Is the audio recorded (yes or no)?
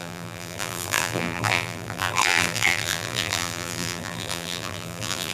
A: no